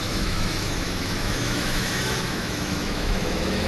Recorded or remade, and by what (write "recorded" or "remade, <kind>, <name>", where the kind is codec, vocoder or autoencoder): remade, autoencoder, DAC-VAE